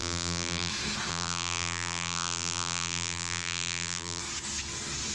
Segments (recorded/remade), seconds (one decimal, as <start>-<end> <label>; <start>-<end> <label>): 0.0-0.7 remade; 0.7-1.1 recorded; 1.1-4.2 remade; 4.2-5.1 recorded